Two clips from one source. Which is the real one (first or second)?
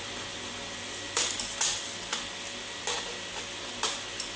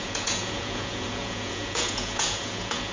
first